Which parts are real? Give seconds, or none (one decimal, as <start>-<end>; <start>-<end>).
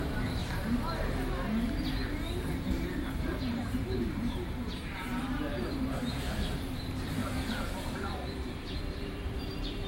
0.4-2.9